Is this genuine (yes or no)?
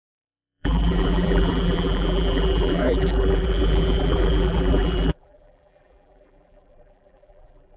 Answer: no